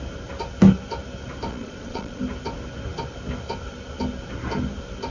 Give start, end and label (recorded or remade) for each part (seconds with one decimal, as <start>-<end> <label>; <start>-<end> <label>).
0.0-1.5 recorded; 1.5-2.2 remade; 2.2-5.1 recorded